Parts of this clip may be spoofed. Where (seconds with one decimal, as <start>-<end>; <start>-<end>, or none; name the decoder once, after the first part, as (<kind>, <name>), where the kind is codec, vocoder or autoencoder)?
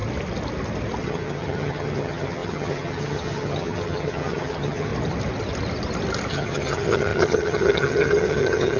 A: 1.0-4.9 (vocoder, HiFi-GAN); 6.3-8.8